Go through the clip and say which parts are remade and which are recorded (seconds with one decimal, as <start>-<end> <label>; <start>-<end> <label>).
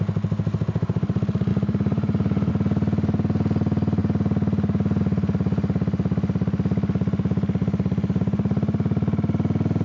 0.0-1.5 recorded; 1.5-2.5 remade; 2.5-7.6 recorded; 7.6-8.2 remade; 8.2-9.8 recorded